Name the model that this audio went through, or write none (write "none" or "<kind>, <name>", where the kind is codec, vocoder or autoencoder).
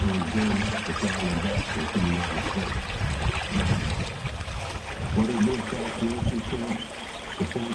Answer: none